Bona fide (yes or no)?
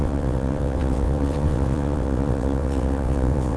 no